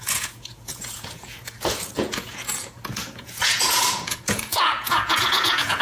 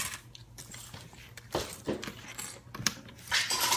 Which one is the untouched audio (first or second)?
second